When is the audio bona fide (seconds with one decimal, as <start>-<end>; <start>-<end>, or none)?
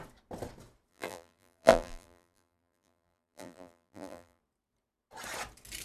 0.0-0.9; 4.4-5.8